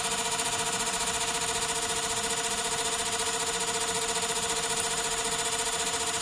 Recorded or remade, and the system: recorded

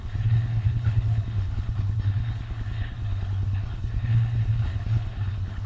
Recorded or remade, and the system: remade, codec, HILCodec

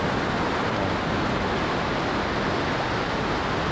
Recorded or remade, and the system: recorded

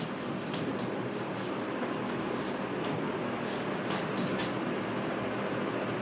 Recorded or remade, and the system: recorded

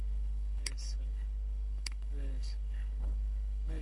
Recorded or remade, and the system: remade, codec, HILCodec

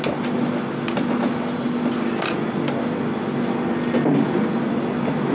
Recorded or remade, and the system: recorded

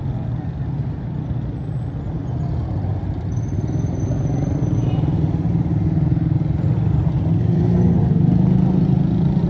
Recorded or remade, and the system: recorded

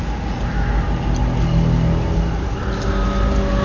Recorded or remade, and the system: recorded